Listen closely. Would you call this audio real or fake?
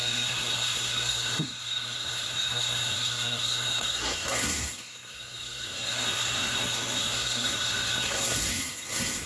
fake